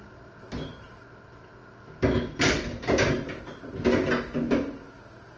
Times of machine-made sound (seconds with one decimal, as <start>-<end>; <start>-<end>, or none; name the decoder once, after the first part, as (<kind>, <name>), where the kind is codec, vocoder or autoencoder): none